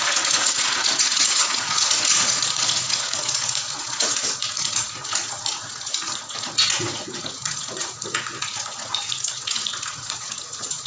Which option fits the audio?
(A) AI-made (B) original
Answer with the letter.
A